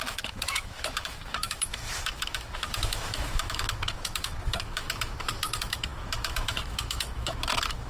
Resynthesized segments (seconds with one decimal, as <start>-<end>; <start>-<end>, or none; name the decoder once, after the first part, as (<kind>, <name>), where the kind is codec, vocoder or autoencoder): 0.0-7.9 (autoencoder, DAC-VAE)